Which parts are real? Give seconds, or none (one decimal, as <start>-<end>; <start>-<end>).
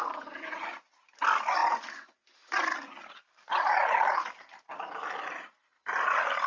0.0-6.5